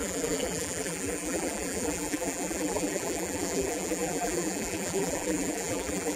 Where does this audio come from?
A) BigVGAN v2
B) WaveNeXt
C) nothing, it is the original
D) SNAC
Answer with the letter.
A